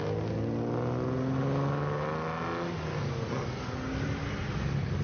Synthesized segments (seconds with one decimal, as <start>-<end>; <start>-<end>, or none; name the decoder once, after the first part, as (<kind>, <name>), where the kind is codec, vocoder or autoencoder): none